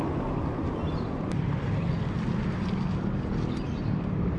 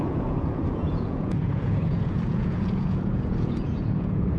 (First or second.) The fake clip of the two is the second